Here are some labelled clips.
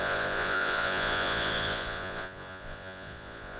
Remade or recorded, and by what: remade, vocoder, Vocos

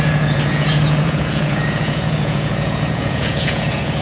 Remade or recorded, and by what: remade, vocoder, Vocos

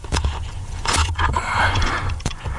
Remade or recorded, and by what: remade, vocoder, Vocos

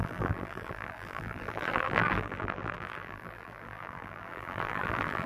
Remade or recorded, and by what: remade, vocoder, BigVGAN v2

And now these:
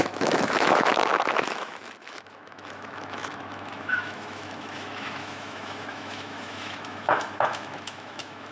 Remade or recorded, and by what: remade, autoencoder, DAC-VAE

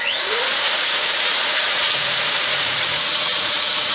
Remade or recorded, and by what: remade, vocoder, Vocos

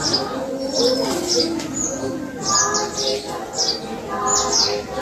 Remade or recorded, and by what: recorded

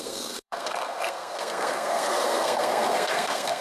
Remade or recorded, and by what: remade, codec, SNAC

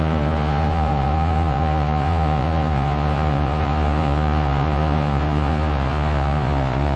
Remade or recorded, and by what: remade, vocoder, Vocos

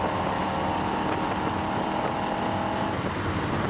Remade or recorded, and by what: recorded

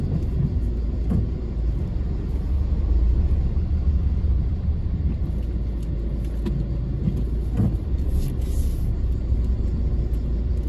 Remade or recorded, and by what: recorded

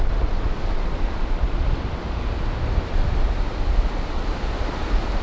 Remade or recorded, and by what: recorded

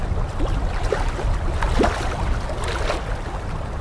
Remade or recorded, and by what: recorded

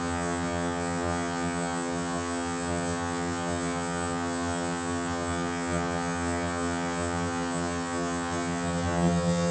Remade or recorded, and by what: remade, vocoder, HiFi-GAN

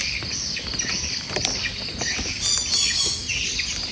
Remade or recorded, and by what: recorded